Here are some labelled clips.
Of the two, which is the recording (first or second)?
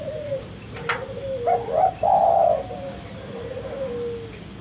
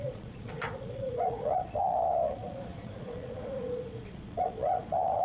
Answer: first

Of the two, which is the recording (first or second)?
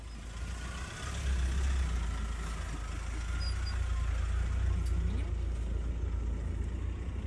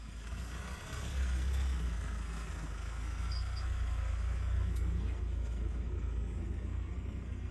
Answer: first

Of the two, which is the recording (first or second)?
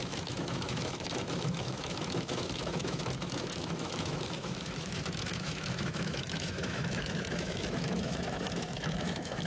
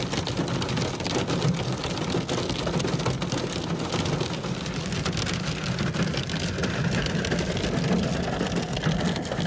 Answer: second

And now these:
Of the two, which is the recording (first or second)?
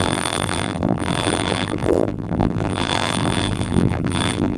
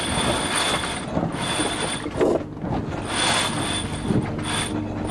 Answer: second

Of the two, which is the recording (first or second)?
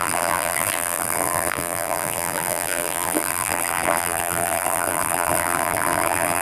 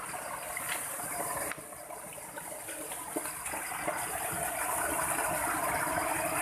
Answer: second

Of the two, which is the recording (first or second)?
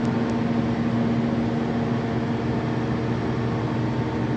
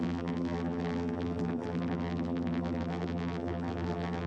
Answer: first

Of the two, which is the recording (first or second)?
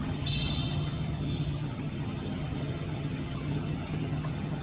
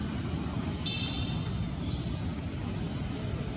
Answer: second